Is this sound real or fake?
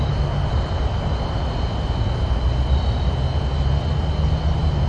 real